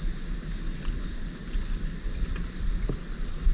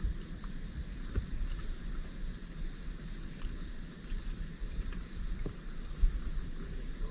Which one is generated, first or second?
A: second